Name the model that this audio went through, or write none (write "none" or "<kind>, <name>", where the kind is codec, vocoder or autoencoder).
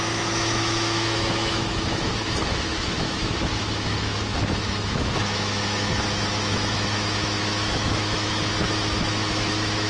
autoencoder, DAC-VAE